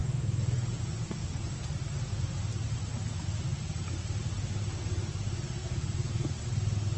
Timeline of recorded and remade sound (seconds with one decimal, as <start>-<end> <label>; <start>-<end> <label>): 0.0-1.5 remade; 1.5-5.6 recorded; 5.6-6.4 remade; 6.4-7.0 recorded